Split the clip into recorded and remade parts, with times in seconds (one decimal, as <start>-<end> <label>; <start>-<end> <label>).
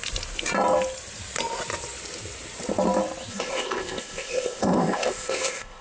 0.0-3.3 recorded; 3.3-5.8 remade